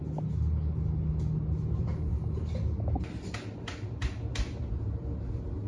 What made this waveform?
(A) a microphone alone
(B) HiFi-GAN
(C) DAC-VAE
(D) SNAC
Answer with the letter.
A